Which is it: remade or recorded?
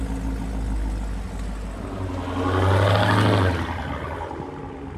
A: recorded